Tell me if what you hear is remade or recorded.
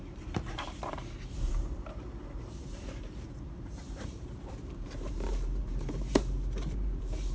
remade